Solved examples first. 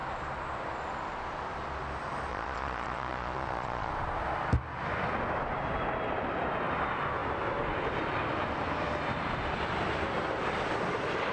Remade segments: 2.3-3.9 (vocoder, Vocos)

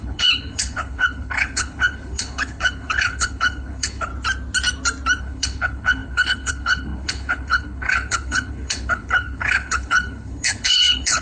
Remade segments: 0.0-4.1 (codec, HILCodec); 5.2-11.2

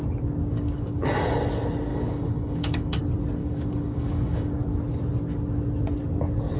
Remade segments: 0.5-1.1 (codec, DAC); 1.9-3.0; 3.4-4.6

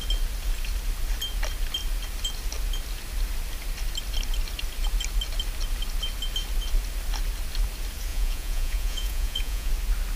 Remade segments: 8.1-9.7 (vocoder, Vocos)

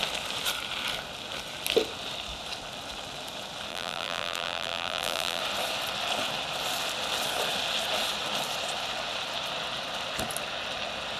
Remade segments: 3.7-5.4 (vocoder, BigVGAN v2)

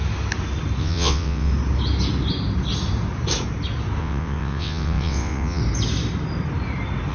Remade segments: 0.8-1.5 (vocoder, WaveNeXt); 4.0-5.6

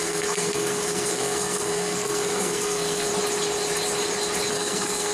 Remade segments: 0.0-3.1 (codec, SNAC); 4.5-5.1

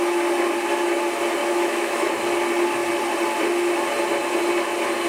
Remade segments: 1.4-2.1 (autoencoder, DAC-VAE)